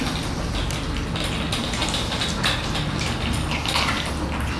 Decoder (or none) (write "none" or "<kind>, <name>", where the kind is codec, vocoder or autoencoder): none